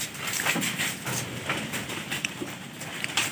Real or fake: real